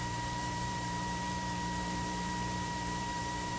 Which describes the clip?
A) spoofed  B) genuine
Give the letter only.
A